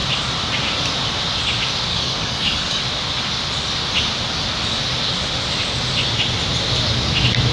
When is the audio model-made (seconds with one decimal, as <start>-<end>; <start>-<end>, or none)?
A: 1.9-2.8